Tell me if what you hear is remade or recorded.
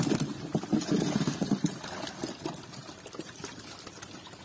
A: recorded